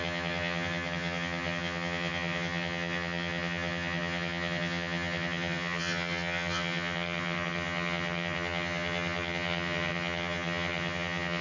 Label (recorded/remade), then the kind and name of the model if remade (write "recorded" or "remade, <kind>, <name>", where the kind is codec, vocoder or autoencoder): remade, vocoder, HiFi-GAN